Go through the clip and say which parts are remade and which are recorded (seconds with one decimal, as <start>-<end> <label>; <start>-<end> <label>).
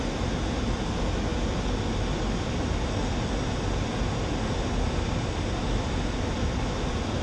0.0-7.2 recorded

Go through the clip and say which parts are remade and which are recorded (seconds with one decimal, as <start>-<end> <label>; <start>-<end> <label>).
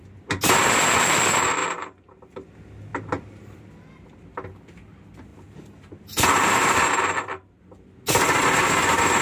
0.0-1.6 recorded; 1.6-2.5 remade; 2.5-2.9 recorded; 2.9-3.6 remade; 3.6-5.3 recorded; 5.3-7.6 remade; 7.6-9.2 recorded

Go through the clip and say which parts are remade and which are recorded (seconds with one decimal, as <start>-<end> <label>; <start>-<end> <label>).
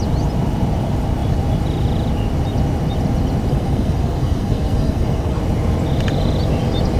0.0-3.5 recorded; 3.5-5.4 remade; 5.4-7.0 recorded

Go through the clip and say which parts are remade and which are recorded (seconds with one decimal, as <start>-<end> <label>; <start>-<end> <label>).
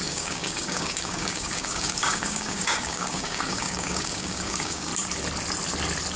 0.0-4.9 remade; 4.9-6.2 recorded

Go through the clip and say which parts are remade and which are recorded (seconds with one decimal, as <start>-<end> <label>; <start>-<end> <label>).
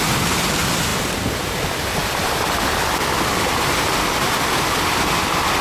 0.0-0.9 recorded; 0.9-1.5 remade; 1.5-2.0 recorded; 2.0-5.6 remade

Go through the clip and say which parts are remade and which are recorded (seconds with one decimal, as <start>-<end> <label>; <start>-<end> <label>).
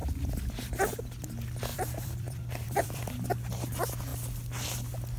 0.0-0.5 remade; 0.5-1.7 recorded; 1.7-3.1 remade; 3.1-5.2 recorded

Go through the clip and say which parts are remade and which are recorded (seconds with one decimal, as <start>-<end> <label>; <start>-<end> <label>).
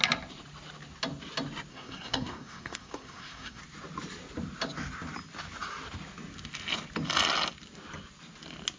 0.0-1.7 recorded; 1.7-3.6 remade; 3.6-8.8 recorded